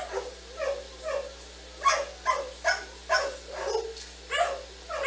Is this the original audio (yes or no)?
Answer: yes